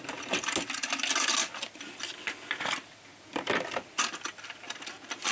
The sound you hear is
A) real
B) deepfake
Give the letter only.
A